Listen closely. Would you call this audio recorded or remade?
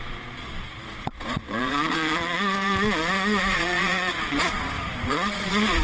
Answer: remade